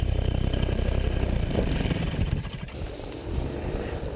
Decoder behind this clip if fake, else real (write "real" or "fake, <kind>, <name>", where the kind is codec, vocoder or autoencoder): fake, vocoder, BigVGAN v2